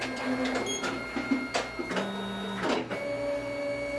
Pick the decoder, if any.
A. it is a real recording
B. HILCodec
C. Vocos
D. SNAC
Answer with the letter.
A